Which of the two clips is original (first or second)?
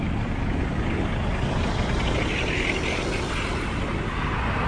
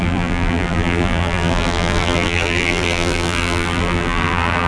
first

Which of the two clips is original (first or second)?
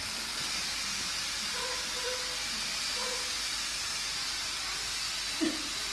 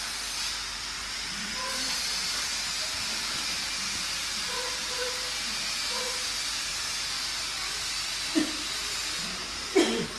second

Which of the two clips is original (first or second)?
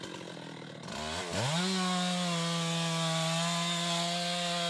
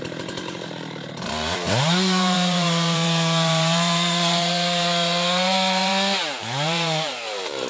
first